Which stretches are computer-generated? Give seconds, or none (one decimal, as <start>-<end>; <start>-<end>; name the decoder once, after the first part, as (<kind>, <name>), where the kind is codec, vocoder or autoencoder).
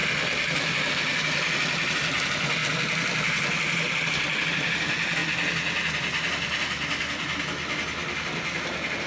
none